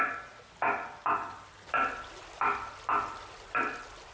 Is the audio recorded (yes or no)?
yes